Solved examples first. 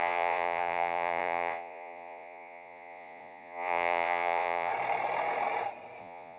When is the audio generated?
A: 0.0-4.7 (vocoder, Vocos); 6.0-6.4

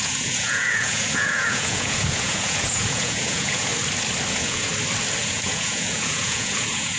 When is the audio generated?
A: 0.0-3.7 (vocoder, Vocos); 4.3-4.7; 5.2-7.0

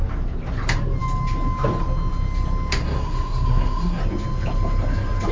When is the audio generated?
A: 2.8-4.0 (codec, SNAC)